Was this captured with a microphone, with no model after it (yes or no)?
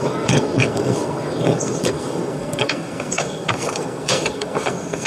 no